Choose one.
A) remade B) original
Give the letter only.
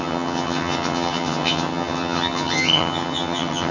A